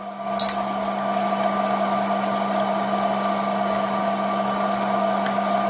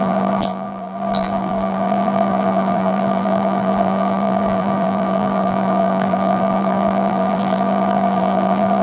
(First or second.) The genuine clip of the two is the first